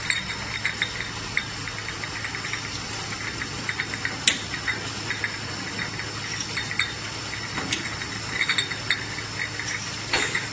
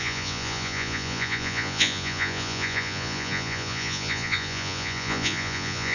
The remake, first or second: second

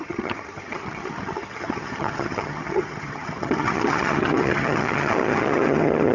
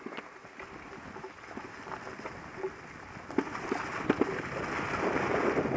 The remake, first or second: first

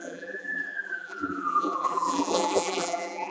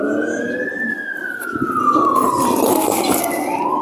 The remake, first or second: first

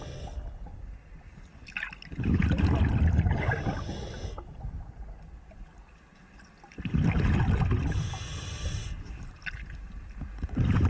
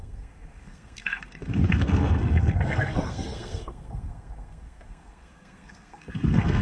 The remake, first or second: second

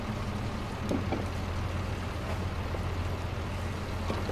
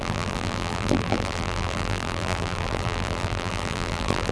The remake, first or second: second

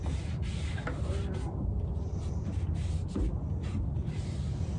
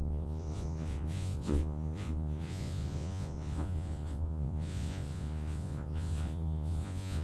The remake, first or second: second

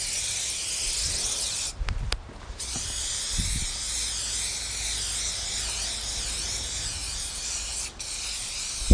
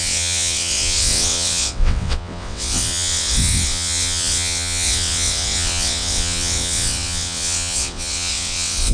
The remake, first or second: second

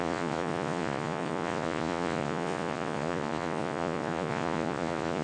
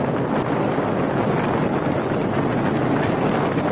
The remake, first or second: first